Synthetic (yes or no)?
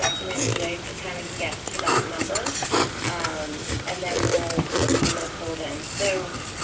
no